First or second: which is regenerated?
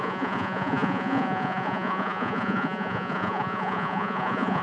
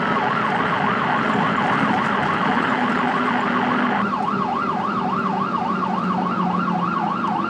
first